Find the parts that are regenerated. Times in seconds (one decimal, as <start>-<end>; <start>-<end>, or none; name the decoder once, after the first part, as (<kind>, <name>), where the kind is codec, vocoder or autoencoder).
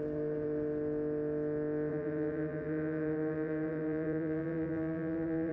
1.9-5.5 (vocoder, BigVGAN v2)